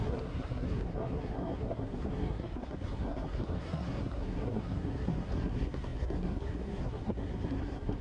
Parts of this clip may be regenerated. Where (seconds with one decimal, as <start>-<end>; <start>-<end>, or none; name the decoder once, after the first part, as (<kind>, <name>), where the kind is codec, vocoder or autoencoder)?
0.0-8.0 (codec, SNAC)